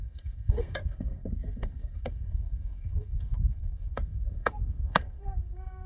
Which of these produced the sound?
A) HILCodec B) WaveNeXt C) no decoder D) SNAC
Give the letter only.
D